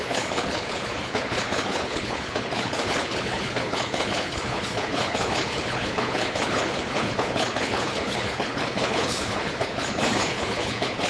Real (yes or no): no